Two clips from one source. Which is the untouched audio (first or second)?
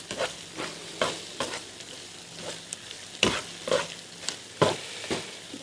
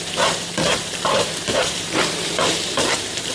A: first